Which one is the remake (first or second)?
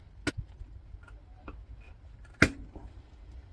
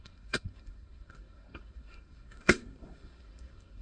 second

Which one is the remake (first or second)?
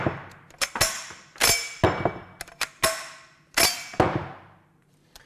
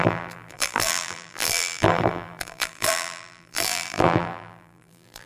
second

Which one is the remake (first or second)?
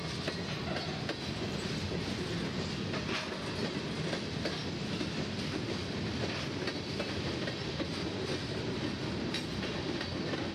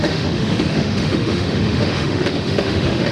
second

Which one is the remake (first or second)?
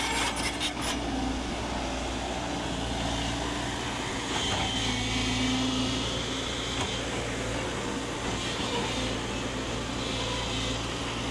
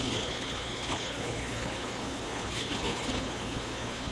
second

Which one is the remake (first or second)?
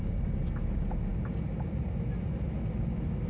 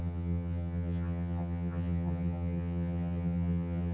second